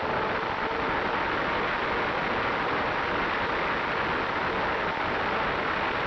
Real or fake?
real